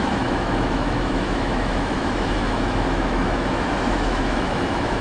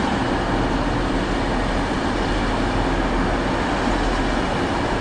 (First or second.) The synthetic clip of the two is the first